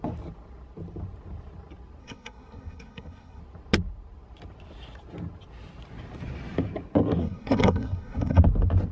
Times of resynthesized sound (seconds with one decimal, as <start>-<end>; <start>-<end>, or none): 2.0-3.4; 7.2-8.4